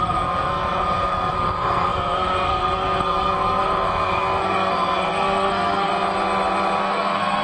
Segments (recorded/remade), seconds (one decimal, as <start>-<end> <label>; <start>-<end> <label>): 0.0-5.9 remade; 5.9-6.8 recorded; 6.8-7.4 remade